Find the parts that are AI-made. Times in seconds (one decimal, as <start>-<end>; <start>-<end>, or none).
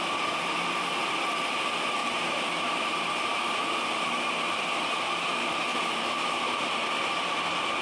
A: 2.0-3.6; 5.7-6.6